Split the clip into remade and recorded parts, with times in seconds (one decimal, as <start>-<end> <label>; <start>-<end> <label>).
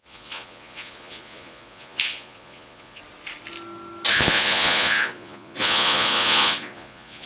0.0-3.0 remade; 3.0-4.1 recorded; 4.1-7.3 remade